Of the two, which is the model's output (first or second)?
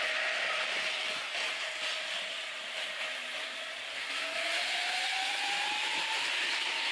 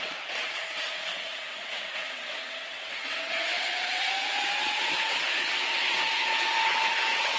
second